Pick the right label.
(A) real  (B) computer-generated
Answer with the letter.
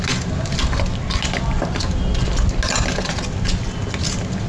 A